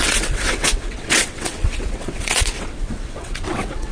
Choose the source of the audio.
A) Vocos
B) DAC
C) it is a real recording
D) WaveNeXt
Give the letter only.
D